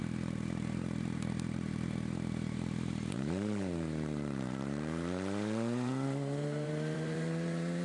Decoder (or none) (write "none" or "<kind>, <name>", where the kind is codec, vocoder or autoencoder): vocoder, BigVGAN v2